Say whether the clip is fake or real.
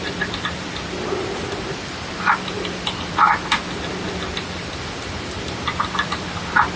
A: fake